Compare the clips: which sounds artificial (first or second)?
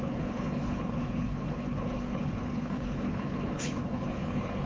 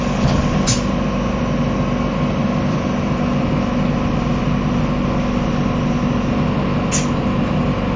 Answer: first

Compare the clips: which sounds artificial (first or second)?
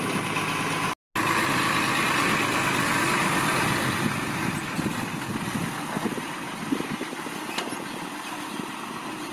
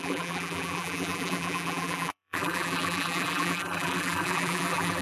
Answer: second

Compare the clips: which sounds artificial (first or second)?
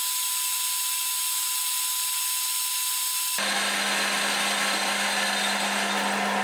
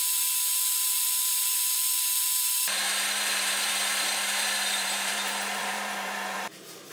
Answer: second